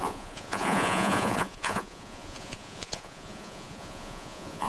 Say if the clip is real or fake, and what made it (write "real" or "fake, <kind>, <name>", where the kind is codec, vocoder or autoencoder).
fake, vocoder, Vocos